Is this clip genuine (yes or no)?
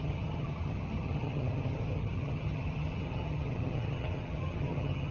no